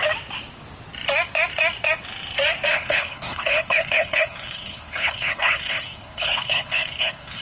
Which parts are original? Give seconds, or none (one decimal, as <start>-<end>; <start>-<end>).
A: 0.0-2.7